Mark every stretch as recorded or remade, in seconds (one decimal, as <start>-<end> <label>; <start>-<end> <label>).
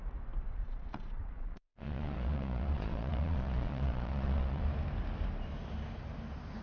0.0-0.6 recorded; 0.6-4.6 remade; 4.6-6.6 recorded